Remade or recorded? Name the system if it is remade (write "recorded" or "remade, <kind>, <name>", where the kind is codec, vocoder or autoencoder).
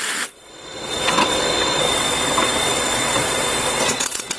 remade, vocoder, WaveNeXt